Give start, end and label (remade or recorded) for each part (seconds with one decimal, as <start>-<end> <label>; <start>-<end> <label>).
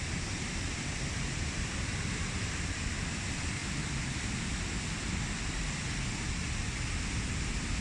0.0-7.8 recorded